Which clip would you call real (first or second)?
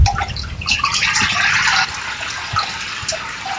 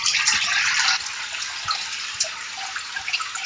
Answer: first